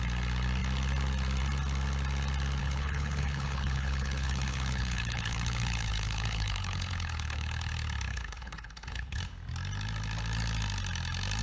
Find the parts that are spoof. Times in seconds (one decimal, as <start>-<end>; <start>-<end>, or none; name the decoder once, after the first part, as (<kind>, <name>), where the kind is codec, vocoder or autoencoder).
2.6-7.7 (codec, HILCodec); 8.1-9.2